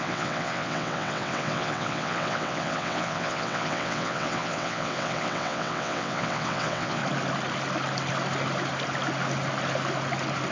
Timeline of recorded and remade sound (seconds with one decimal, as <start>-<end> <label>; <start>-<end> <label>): 0.0-7.0 remade; 7.0-10.5 recorded